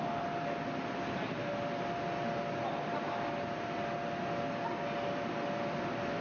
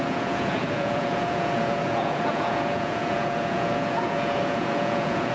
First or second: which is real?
first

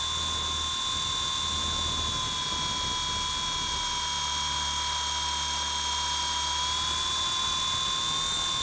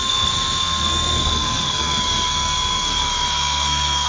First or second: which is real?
first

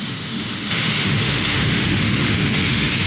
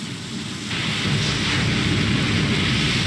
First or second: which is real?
second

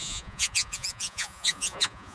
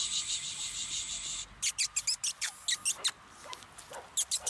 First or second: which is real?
second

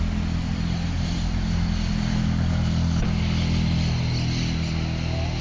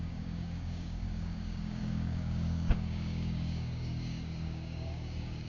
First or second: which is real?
first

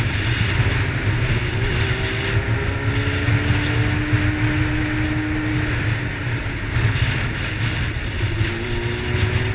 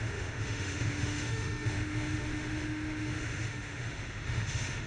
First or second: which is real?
first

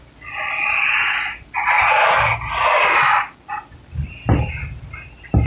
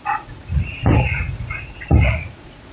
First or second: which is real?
first